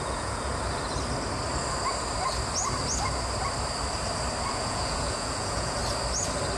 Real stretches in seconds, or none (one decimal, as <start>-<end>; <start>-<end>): 0.5-4.5; 5.8-6.6